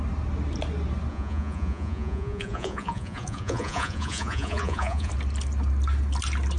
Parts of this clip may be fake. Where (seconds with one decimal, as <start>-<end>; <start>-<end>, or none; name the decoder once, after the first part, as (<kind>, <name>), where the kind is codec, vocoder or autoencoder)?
1.1-5.1 (vocoder, Vocos)